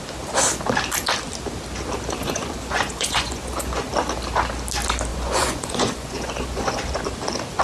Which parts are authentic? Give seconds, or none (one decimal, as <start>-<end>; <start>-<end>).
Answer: 0.0-2.2; 3.9-5.1; 6.8-7.6